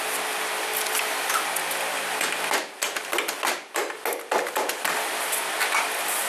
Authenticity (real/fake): real